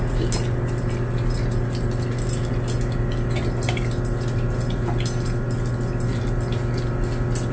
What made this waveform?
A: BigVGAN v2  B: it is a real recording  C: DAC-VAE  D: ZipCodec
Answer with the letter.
B